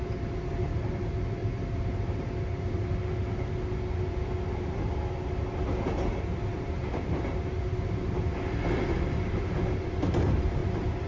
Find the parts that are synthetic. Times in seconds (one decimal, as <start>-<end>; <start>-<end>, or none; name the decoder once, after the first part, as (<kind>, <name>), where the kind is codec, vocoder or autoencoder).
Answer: 1.4-2.9 (vocoder, BigVGAN v2); 10.6-11.1